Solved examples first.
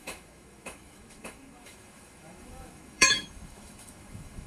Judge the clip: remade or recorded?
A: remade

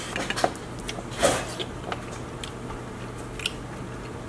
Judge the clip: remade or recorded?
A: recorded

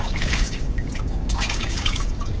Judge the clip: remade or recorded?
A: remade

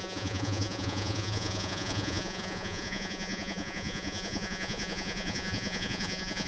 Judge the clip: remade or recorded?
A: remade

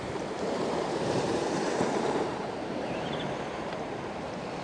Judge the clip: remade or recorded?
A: remade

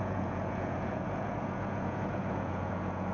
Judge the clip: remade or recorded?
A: remade